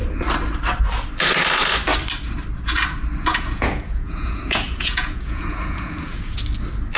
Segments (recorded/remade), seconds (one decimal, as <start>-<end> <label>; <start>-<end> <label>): 0.0-3.3 recorded; 3.3-6.4 remade; 6.4-7.0 recorded